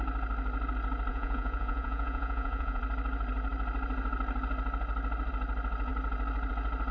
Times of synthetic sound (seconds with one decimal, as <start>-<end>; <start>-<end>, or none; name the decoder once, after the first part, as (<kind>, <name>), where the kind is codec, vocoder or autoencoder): 1.1-2.8 (vocoder, Vocos)